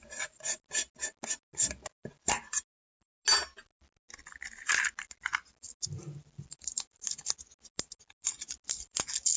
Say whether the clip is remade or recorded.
recorded